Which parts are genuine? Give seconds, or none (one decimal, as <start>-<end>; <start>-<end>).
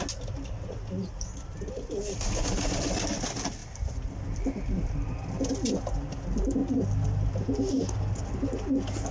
0.0-3.6; 5.4-9.1